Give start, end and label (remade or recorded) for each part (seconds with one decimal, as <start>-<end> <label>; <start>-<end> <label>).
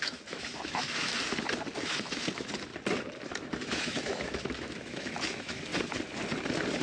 0.0-1.1 remade; 1.1-1.8 recorded; 1.8-2.7 remade; 2.7-3.3 recorded; 3.3-5.7 remade; 5.7-6.8 recorded